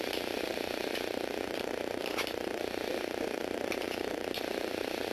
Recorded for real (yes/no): no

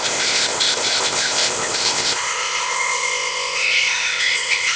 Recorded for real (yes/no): no